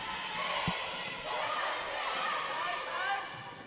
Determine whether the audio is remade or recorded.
recorded